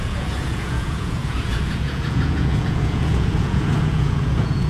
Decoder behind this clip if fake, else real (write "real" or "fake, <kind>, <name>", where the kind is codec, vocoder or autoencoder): fake, vocoder, Vocos